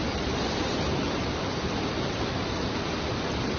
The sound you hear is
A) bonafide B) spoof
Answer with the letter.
B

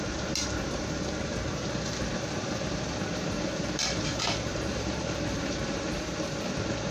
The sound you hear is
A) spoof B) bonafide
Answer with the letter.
A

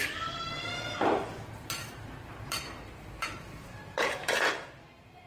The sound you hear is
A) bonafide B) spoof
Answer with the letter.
B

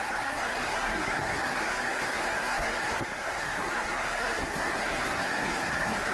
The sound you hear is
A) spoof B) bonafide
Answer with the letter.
A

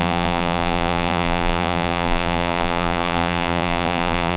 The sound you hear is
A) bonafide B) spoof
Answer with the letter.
B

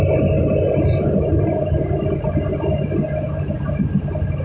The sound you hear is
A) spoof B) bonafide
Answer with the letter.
B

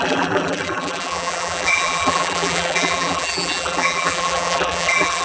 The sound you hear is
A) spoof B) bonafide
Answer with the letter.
A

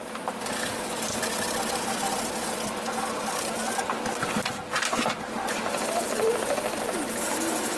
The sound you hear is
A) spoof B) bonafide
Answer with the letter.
B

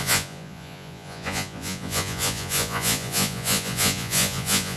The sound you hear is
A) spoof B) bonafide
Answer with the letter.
A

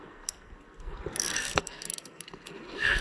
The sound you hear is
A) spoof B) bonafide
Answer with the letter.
A